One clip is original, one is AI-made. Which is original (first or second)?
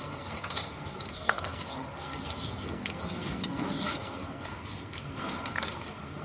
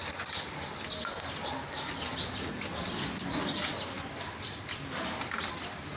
second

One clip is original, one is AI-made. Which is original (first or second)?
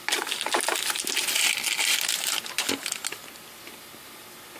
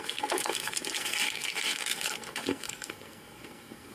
first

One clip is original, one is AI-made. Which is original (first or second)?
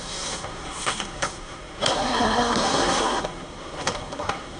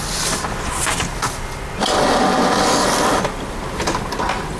second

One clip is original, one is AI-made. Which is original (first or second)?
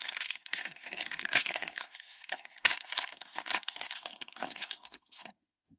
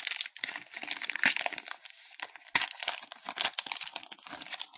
second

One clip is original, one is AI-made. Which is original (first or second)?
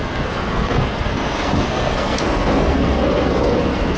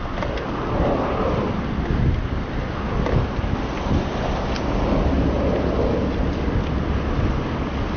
second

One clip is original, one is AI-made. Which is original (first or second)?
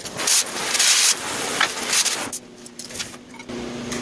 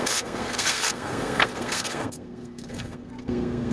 first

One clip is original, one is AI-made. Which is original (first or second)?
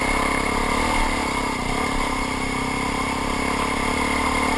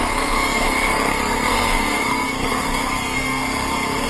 first